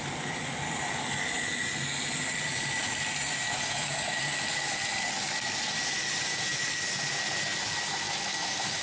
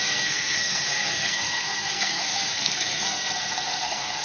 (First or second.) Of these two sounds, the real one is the first